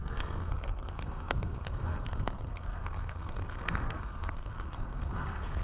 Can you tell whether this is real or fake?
fake